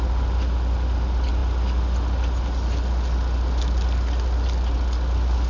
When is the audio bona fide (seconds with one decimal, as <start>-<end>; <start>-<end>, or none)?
0.0-5.5